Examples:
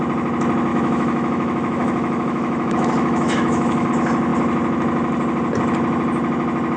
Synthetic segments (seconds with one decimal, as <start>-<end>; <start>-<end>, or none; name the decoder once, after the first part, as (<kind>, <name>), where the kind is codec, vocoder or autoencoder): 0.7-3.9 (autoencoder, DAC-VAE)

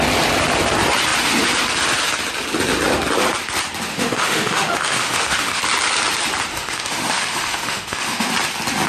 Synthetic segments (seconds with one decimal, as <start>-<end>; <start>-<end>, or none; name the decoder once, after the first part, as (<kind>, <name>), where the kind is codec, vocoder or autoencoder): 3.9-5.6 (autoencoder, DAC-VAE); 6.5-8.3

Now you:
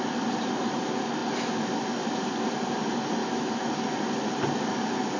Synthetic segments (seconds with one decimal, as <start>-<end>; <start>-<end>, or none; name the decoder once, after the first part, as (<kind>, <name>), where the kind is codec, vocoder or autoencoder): 3.2-3.7 (autoencoder, DAC-VAE)

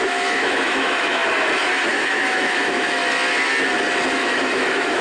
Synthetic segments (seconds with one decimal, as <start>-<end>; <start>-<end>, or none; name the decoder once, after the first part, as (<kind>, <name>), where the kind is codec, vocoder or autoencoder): 0.0-1.2 (autoencoder, DAC-VAE); 1.9-3.0; 4.1-5.0